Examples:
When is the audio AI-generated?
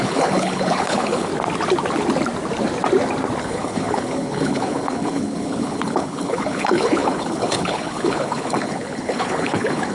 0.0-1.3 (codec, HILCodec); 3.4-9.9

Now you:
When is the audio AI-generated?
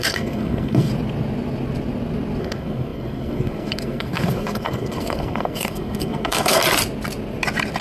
0.0-0.9 (codec, SNAC); 2.4-6.6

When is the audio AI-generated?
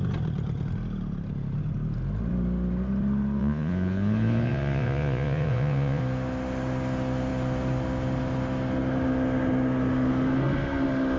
3.4-6.0 (vocoder, Vocos)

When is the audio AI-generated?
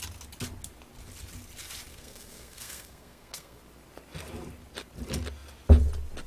1.9-3.6 (codec, SNAC)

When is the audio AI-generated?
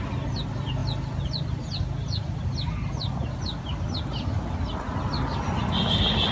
none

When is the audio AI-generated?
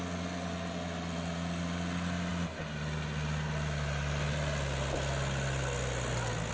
none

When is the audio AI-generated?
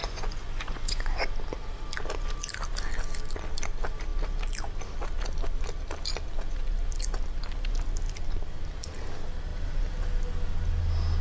0.0-1.2 (vocoder, Vocos)